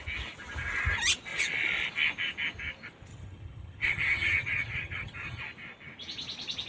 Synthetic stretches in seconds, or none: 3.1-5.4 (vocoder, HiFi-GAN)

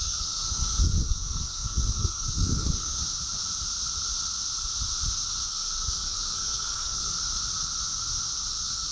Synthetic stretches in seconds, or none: 0.0-3.0 (codec, SNAC); 5.5-7.1; 8.5-8.9

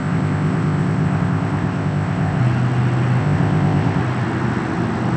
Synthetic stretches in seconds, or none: 0.0-2.4 (codec, ZipCodec); 3.2-4.0

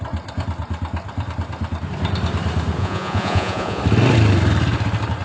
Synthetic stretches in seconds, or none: 2.8-3.8 (vocoder, Vocos)